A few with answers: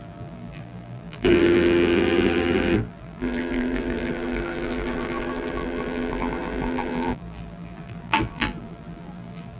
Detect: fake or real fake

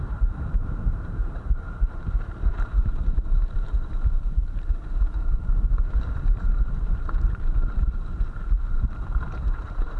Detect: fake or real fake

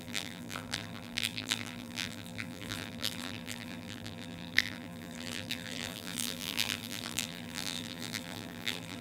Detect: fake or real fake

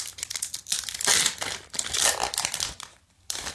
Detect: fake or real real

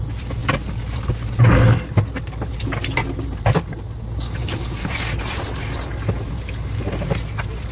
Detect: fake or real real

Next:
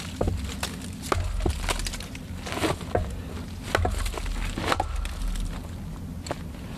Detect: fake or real real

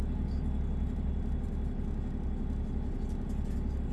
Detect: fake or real real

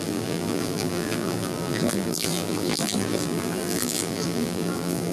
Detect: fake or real fake